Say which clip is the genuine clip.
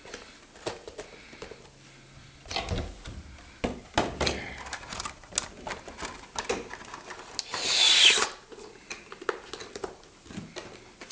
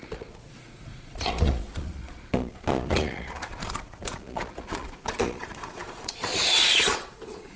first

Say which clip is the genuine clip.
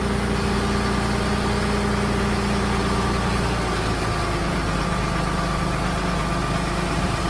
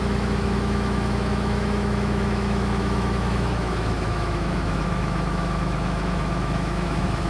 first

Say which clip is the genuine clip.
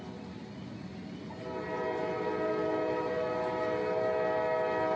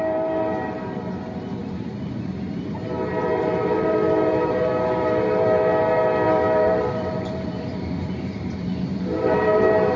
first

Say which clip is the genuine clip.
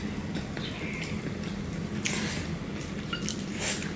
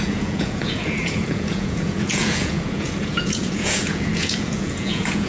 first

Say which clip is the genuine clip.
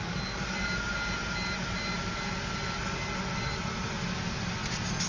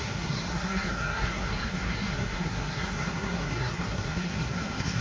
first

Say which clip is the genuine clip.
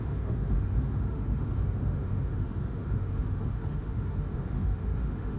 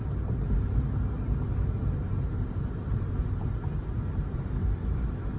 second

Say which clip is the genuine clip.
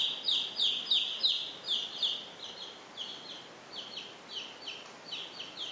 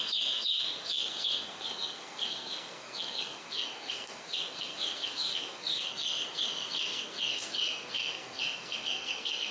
first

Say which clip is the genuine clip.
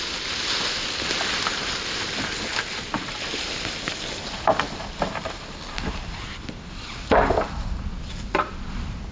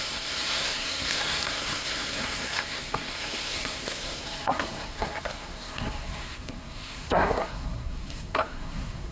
first